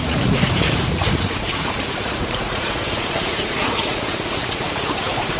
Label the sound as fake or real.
fake